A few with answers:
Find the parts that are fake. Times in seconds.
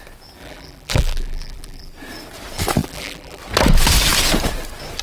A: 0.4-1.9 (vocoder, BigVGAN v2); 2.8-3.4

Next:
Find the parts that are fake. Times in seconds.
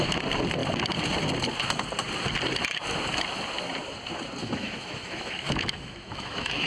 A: 4.4-6.7 (autoencoder, DAC-VAE)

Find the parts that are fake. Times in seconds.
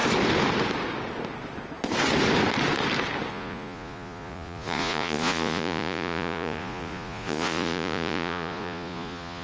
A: 3.3-9.4 (vocoder, Vocos)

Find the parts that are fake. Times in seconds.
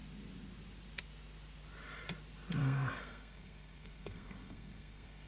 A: 2.6-5.3 (codec, SNAC)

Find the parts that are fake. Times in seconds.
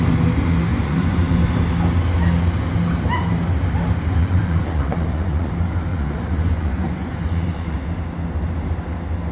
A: 0.7-1.4 (vocoder, Vocos); 4.2-5.5; 5.9-7.8